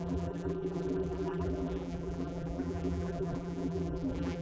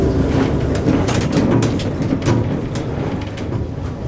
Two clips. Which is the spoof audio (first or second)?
first